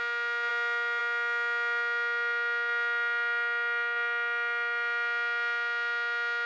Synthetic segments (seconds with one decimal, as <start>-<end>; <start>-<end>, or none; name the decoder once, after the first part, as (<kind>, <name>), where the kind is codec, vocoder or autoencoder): none